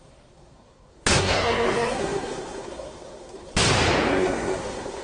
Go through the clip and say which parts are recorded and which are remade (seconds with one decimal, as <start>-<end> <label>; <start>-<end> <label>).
0.0-3.5 remade; 3.5-4.1 recorded; 4.1-5.0 remade